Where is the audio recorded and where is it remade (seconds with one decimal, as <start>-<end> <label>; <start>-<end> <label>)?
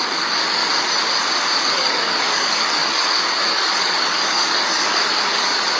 0.0-0.6 remade; 0.6-1.6 recorded; 1.6-5.8 remade